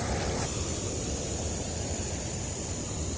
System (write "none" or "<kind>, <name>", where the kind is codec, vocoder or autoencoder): vocoder, BigVGAN v2